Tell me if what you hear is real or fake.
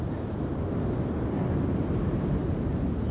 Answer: real